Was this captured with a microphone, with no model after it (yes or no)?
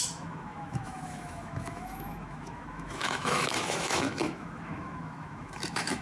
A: no